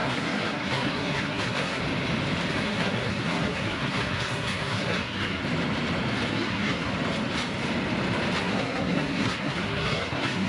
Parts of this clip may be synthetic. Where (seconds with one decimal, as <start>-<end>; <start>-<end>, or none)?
0.0-1.8; 2.5-5.4; 6.3-6.9; 8.4-10.5